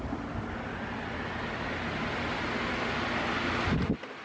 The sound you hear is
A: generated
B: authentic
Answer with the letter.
B